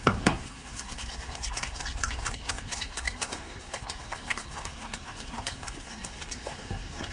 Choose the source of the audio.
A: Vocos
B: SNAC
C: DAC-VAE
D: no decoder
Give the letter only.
B